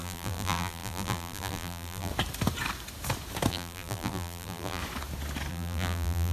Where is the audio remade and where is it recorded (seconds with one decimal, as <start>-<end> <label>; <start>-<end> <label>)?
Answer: 0.0-2.1 remade; 2.1-3.5 recorded; 3.5-4.8 remade; 4.8-5.5 recorded; 5.5-6.3 remade

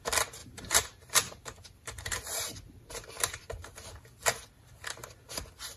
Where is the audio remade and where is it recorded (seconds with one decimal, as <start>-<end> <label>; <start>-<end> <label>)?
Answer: 0.0-0.4 recorded; 0.4-3.9 remade; 3.9-5.8 recorded

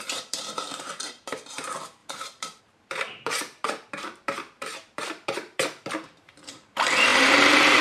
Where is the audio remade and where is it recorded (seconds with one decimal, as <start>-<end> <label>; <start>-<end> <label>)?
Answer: 0.0-7.8 remade

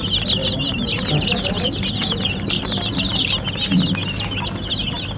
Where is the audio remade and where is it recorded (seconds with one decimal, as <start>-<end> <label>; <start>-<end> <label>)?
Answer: 0.0-0.4 recorded; 0.4-3.5 remade; 3.5-5.2 recorded

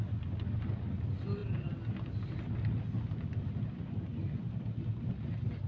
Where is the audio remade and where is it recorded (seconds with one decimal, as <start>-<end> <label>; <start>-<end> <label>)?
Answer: 0.0-5.7 recorded